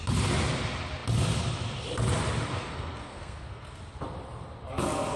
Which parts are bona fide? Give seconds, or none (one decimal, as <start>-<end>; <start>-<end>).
0.0-2.5; 3.8-5.2